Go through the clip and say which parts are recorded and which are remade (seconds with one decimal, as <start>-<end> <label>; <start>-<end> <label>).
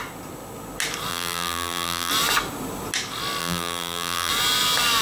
0.0-1.1 recorded; 1.1-2.1 remade; 2.1-3.4 recorded; 3.4-4.3 remade; 4.3-5.0 recorded